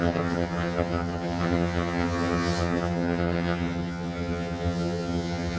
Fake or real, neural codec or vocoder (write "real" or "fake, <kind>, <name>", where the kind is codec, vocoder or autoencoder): fake, vocoder, HiFi-GAN